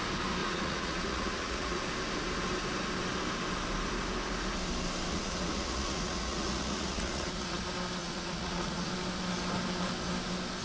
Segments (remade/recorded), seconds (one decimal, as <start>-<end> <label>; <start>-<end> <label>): 0.0-0.4 recorded; 0.4-1.8 remade; 1.8-5.1 recorded; 5.1-7.6 remade; 7.6-8.0 recorded; 8.0-8.9 remade; 8.9-10.6 recorded